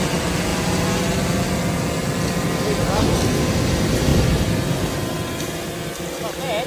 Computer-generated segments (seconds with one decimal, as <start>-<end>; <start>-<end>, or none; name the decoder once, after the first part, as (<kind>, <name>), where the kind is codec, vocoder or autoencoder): none